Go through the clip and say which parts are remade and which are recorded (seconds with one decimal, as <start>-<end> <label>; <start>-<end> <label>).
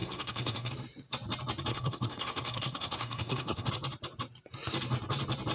0.0-0.7 remade; 0.7-1.7 recorded; 1.7-3.7 remade; 3.7-5.5 recorded